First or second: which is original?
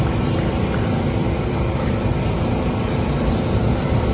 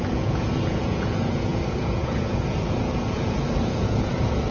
first